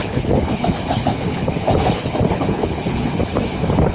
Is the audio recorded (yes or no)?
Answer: no